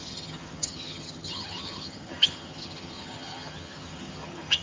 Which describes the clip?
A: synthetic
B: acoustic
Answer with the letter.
A